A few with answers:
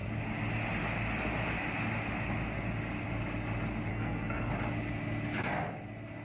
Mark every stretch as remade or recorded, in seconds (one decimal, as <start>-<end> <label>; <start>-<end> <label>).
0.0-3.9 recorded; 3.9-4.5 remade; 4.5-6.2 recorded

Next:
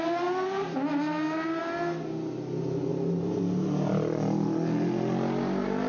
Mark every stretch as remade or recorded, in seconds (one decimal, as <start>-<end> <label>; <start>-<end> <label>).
0.0-0.9 recorded; 0.9-1.6 remade; 1.6-2.9 recorded; 2.9-3.4 remade; 3.4-5.9 recorded

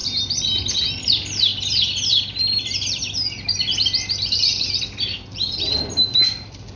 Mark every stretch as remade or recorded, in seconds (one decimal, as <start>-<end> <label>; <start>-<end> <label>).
0.0-1.0 recorded; 1.0-1.5 remade; 1.5-5.6 recorded; 5.6-6.8 remade

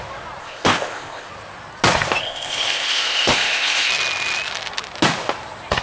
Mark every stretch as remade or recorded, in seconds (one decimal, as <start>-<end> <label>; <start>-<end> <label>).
0.0-0.4 recorded; 0.4-1.3 remade; 1.3-2.2 recorded; 2.2-3.9 remade; 3.9-5.8 recorded